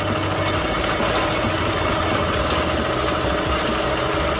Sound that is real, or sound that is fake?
real